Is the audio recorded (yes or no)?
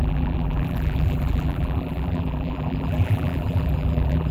no